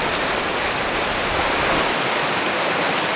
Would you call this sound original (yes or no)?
no